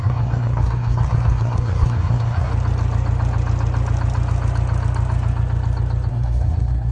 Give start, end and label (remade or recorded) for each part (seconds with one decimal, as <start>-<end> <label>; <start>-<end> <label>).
0.0-2.5 remade; 2.5-6.1 recorded; 6.1-6.9 remade